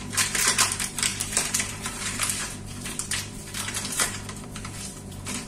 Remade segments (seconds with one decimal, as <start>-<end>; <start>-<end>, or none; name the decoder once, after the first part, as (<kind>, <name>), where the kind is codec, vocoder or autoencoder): 0.0-5.5 (vocoder, BigVGAN v2)